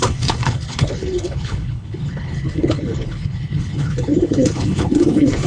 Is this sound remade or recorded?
remade